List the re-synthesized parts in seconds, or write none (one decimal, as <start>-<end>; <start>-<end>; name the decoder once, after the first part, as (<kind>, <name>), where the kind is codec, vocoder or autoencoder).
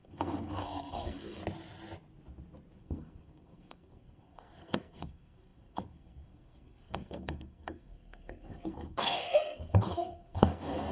0.0-1.4 (codec, SNAC); 2.8-10.9